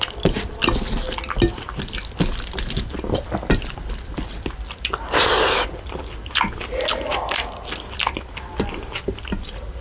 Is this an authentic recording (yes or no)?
yes